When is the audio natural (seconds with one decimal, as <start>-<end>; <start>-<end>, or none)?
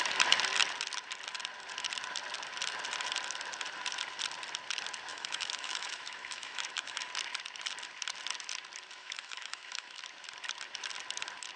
0.0-5.1; 7.1-9.0; 10.0-11.6